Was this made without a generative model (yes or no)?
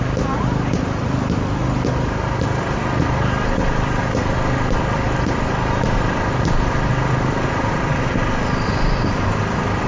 yes